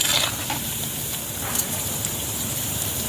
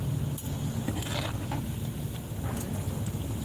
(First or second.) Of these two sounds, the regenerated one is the first